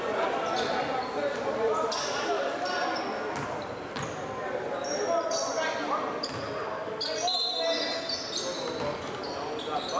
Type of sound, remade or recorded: recorded